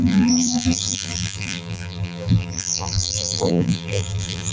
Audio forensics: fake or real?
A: fake